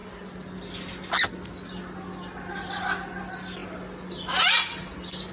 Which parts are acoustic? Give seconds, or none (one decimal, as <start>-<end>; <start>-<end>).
0.0-5.3